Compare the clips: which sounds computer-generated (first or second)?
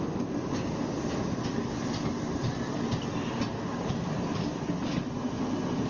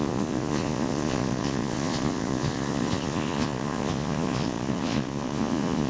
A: second